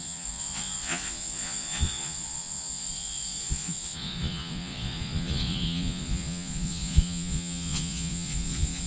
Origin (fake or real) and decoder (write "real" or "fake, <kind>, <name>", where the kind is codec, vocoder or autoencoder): fake, vocoder, Vocos